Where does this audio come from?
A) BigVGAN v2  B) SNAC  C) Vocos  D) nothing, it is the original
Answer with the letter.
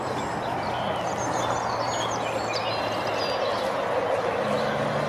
D